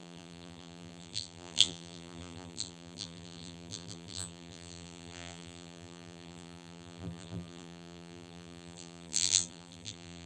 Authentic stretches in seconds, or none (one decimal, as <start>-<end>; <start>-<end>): none

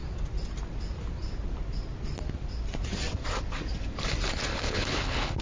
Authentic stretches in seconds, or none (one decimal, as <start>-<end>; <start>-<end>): 0.0-4.5

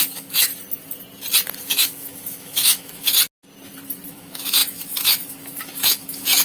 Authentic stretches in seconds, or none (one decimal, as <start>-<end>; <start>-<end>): 0.5-1.6; 3.2-4.1

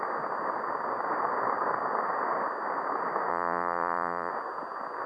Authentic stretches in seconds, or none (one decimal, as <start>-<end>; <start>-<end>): 0.0-3.3; 4.3-5.1